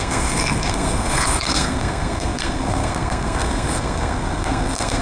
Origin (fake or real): fake